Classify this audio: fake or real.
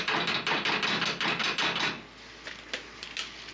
real